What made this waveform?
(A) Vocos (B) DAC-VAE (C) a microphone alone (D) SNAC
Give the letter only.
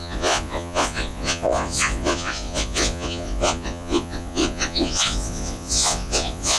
A